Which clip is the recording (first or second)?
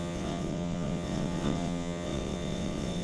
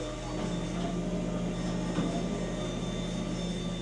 second